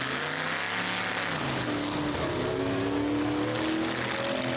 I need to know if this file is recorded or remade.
recorded